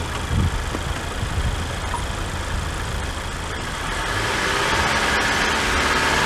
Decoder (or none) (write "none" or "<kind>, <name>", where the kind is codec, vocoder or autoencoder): none